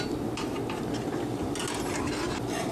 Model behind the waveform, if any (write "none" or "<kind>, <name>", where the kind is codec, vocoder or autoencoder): none